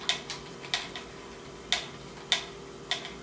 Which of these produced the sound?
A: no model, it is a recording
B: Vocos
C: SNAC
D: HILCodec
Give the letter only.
A